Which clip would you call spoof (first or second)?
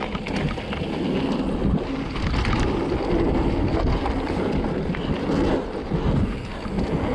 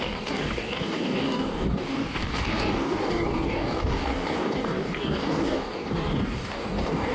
second